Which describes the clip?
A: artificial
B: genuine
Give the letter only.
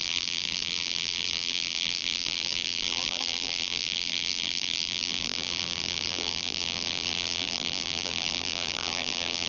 A